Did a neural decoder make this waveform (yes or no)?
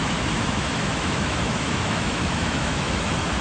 yes